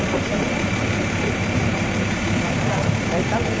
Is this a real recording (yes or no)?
no